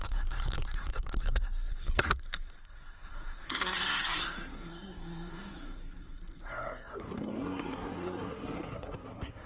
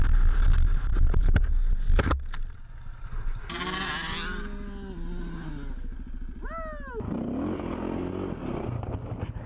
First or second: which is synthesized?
first